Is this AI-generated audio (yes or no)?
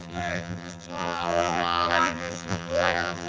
yes